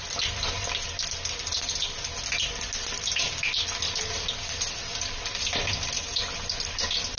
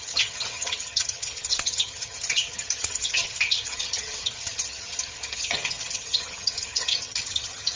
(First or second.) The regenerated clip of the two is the second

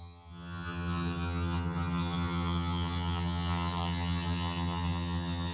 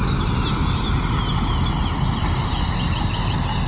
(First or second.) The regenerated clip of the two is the first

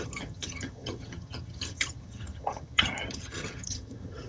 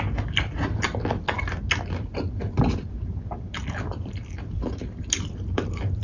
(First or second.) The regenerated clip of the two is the first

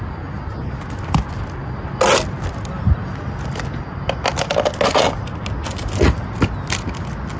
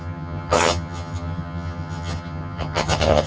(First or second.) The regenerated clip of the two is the second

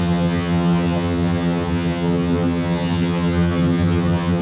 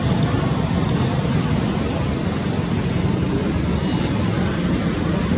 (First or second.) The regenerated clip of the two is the first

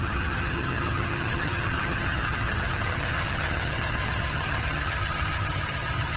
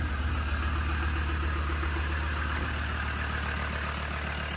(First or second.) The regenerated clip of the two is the first